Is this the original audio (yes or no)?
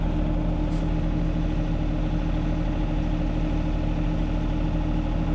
yes